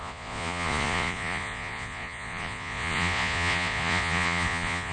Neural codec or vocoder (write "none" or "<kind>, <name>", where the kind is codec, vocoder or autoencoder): vocoder, Vocos